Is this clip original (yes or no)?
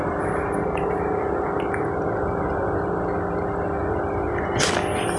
yes